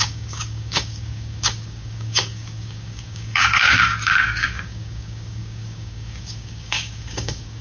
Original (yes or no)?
no